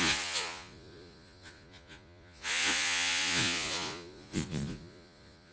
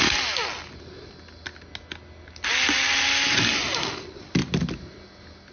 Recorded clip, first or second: second